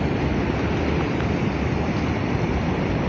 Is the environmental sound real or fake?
real